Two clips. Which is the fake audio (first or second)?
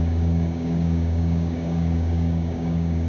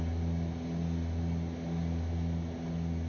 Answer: first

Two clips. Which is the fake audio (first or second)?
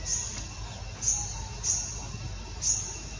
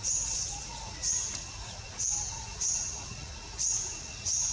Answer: second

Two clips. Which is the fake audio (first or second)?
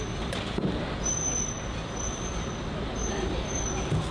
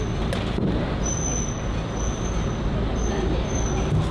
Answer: first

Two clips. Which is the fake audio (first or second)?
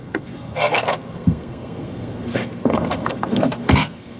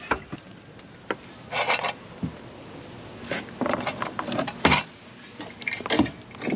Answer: first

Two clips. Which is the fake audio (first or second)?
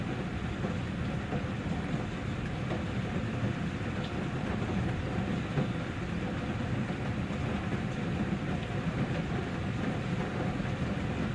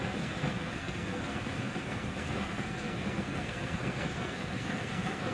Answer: second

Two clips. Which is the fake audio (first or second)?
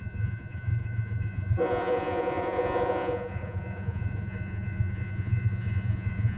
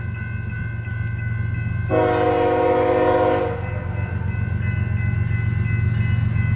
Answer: first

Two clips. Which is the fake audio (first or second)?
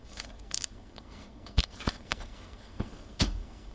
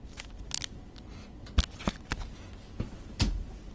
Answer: first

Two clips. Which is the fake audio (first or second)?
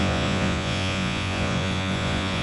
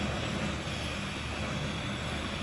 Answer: first